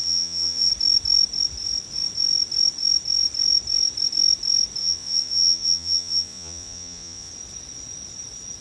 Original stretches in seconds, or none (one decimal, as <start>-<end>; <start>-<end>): 0.7-4.8; 7.3-8.6